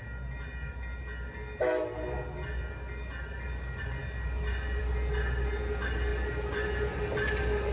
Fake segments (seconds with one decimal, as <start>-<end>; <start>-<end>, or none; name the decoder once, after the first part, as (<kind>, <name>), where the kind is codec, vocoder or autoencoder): none